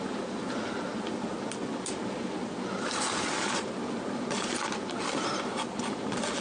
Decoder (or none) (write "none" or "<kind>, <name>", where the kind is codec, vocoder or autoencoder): none